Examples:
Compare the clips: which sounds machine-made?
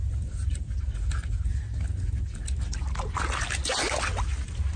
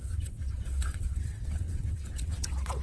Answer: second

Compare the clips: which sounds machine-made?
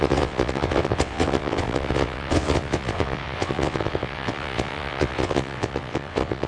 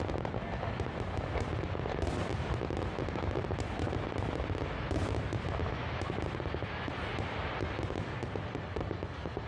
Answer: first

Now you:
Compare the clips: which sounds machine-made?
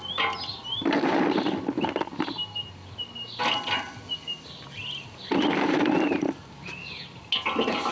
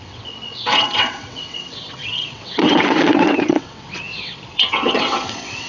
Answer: second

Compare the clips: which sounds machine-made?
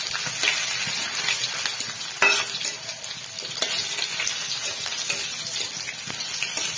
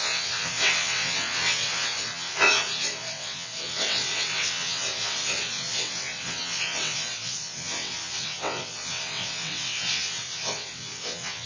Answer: second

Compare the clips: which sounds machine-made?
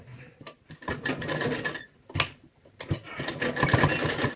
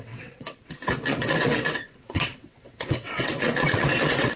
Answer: second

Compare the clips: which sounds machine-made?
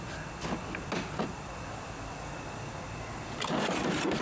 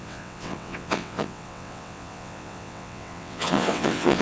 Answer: second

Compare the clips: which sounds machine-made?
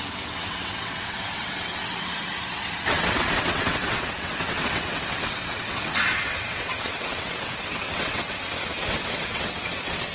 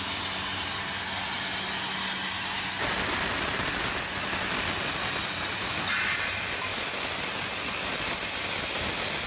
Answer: first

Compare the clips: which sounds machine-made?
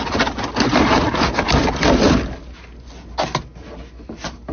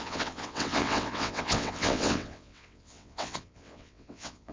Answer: second